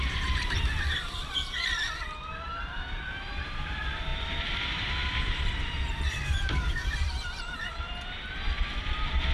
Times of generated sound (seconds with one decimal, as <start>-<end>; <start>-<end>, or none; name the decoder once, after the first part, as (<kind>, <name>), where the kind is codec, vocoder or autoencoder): 0.0-9.3 (vocoder, BigVGAN v2)